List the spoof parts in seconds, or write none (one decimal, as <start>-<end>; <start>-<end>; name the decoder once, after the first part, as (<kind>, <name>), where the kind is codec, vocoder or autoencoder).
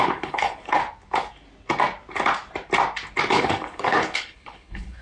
0.0-0.8 (codec, HILCodec); 3.3-5.0